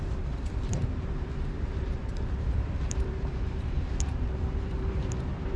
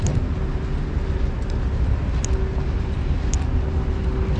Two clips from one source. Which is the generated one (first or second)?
first